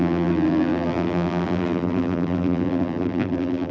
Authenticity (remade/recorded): remade